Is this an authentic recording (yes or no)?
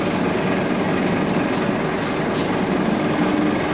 yes